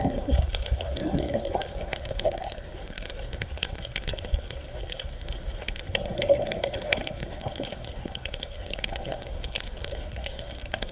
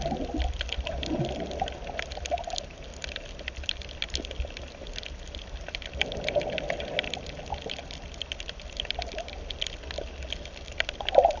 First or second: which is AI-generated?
first